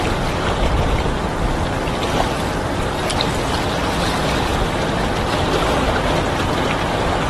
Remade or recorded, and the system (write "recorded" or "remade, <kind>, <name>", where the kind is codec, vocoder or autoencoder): remade, vocoder, BigVGAN v2